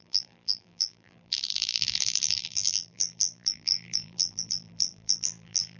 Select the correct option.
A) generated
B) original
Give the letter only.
A